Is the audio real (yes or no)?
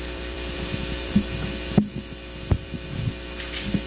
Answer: no